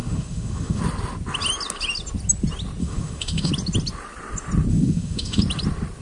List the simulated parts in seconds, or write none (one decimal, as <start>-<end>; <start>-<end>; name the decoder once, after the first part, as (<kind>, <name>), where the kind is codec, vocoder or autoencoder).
0.0-0.8 (autoencoder, DAC-VAE); 2.8-3.5; 4.7-5.4